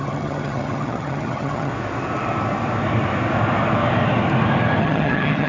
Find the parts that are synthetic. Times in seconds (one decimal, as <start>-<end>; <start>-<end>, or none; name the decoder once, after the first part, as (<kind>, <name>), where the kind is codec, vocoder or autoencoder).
0.0-1.7 (vocoder, HiFi-GAN); 4.8-5.5